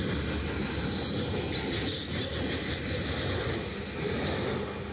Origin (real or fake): real